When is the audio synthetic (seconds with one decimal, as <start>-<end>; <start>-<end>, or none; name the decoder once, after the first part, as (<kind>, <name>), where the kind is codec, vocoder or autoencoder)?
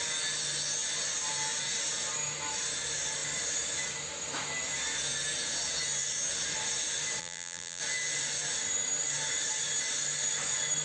7.2-7.8 (vocoder, BigVGAN v2)